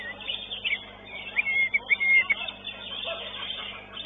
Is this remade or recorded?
recorded